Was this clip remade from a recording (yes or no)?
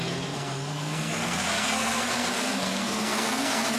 yes